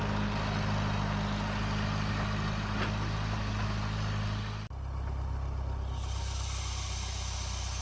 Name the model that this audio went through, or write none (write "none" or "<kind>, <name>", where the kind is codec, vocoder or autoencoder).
none